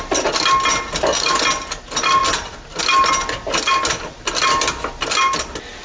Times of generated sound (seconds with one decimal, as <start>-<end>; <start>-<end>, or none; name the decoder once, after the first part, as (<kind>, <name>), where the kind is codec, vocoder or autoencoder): none